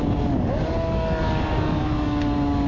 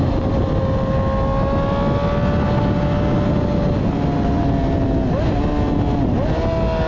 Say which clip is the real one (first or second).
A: second